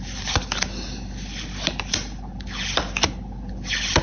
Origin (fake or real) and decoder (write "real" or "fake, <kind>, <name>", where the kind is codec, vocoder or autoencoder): real